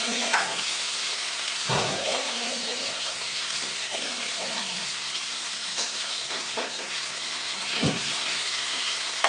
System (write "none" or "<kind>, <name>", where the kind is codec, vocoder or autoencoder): codec, SNAC